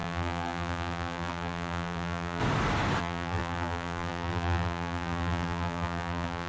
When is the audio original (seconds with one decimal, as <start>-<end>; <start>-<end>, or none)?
2.4-3.0